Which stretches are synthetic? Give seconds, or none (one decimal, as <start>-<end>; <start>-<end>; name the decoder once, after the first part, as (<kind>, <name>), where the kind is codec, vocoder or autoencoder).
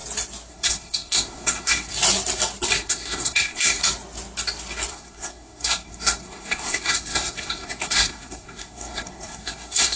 0.5-1.9 (codec, SNAC); 2.8-3.8; 4.9-10.0